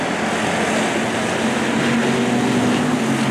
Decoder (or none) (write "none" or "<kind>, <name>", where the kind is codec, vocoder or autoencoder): none